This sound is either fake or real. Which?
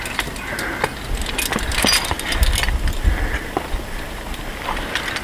real